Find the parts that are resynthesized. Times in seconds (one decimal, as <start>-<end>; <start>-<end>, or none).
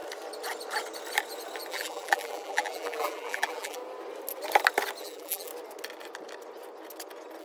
1.7-3.8; 5.0-5.5